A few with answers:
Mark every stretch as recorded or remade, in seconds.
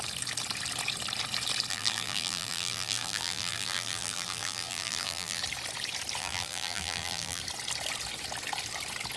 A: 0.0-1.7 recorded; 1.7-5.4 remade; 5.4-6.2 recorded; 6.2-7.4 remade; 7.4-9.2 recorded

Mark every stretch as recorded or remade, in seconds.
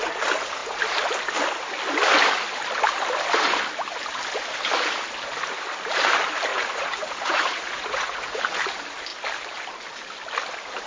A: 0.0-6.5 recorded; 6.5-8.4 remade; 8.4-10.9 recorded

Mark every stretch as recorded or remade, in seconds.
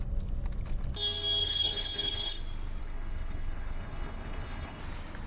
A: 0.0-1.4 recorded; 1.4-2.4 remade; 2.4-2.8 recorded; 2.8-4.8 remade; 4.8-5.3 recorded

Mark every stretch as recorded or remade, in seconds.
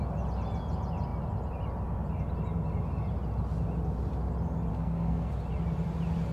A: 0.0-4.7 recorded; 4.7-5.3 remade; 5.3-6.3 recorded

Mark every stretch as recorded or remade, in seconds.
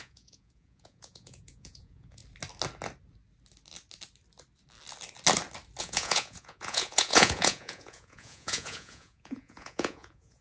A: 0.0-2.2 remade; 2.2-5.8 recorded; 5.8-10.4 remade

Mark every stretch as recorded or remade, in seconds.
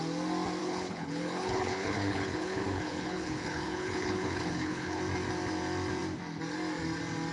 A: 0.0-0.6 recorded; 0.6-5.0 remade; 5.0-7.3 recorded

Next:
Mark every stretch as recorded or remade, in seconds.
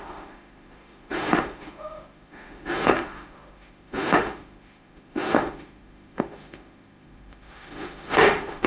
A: 0.0-8.7 remade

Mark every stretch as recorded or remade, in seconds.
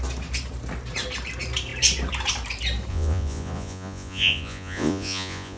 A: 0.0-2.9 recorded; 2.9-5.6 remade